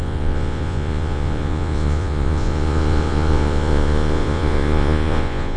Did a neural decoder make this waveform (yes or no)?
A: yes